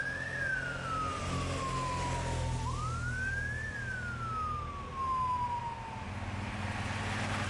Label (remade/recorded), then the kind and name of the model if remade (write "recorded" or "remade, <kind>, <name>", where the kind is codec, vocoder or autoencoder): recorded